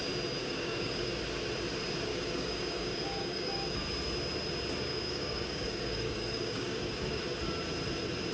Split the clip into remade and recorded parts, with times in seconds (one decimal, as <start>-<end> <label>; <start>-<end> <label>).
0.0-0.4 recorded; 0.4-1.2 remade; 1.2-2.1 recorded; 2.1-3.9 remade; 3.9-4.9 recorded; 4.9-7.2 remade; 7.2-8.3 recorded